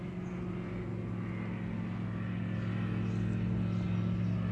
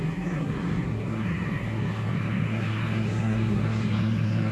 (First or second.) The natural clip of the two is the first